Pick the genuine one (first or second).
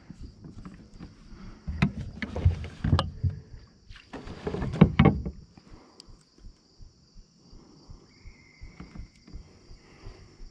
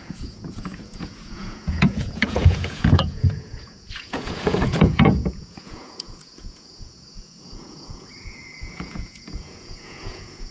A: first